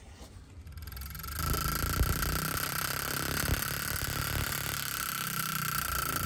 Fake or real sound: real